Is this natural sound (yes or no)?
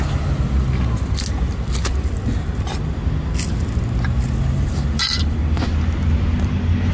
yes